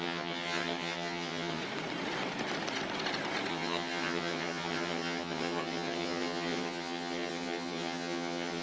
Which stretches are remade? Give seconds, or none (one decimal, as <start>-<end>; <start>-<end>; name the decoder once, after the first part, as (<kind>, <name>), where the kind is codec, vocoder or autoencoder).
0.0-1.6 (vocoder, HiFi-GAN); 3.5-8.6